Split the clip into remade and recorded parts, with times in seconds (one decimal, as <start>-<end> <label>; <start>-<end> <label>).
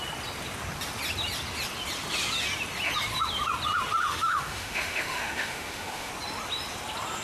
0.0-4.1 recorded; 4.1-6.1 remade; 6.1-7.2 recorded